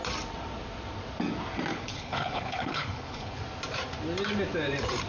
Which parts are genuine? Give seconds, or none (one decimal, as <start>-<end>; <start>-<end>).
0.0-1.7; 3.4-5.1